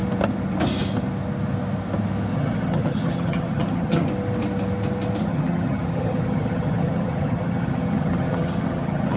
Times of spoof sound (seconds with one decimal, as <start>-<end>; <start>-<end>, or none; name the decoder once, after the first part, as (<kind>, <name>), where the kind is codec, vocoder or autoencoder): 2.3-4.1 (vocoder, HiFi-GAN); 5.2-9.2